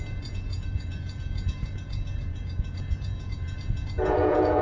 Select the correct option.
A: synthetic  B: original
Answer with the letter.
A